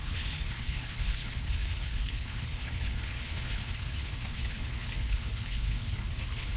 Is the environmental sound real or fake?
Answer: fake